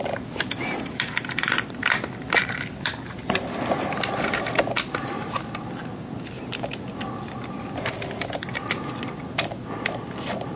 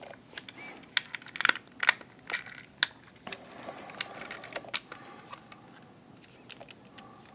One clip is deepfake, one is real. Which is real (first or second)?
second